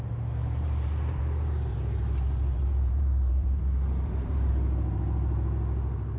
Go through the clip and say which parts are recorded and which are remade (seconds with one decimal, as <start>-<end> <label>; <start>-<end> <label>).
0.0-0.4 recorded; 0.4-1.2 remade; 1.2-1.7 recorded; 1.7-4.5 remade; 4.5-6.2 recorded